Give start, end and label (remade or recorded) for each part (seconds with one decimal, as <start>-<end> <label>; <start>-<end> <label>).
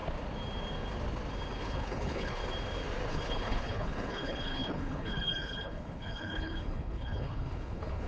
0.0-1.6 recorded; 1.6-2.4 remade; 2.4-3.1 recorded; 3.1-8.1 remade